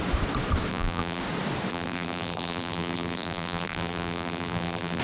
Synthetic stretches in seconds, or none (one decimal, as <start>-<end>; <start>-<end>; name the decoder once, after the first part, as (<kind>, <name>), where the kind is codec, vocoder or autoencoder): 0.7-1.2 (vocoder, BigVGAN v2); 1.7-5.0